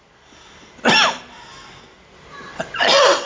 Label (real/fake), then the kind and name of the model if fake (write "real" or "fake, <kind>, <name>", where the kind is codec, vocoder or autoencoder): real